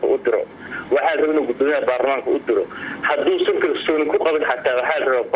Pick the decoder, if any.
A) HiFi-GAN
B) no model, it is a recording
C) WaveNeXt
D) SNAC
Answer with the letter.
B